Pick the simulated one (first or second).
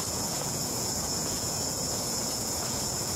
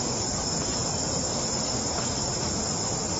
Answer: first